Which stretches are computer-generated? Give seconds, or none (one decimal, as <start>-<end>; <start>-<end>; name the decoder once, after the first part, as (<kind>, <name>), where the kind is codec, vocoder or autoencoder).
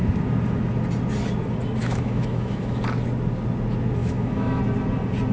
1.8-2.8 (autoencoder, DAC-VAE); 4.0-4.6